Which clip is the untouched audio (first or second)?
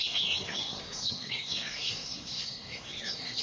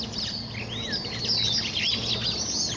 second